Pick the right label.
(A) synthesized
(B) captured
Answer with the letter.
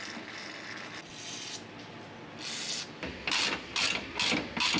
B